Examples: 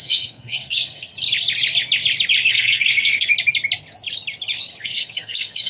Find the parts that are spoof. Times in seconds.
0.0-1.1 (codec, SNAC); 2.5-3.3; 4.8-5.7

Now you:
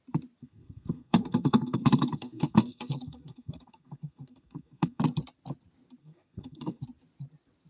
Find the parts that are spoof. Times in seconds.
0.4-5.0 (codec, SNAC); 6.0-6.8

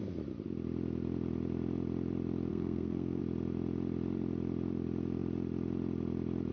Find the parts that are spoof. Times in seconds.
2.5-3.2 (codec, SNAC)